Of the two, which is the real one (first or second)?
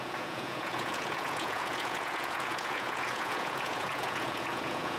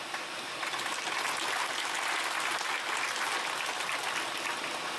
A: second